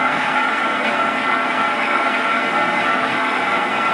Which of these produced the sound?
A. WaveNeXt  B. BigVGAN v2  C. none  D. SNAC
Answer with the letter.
D